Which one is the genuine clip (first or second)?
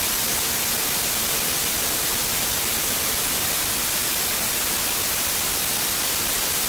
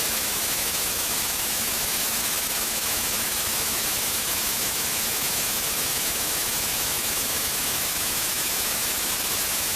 first